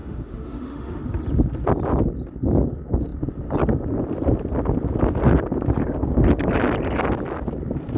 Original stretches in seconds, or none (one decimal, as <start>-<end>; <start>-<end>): 1.0-8.0